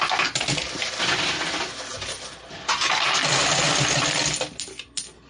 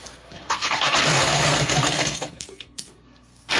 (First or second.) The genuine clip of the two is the first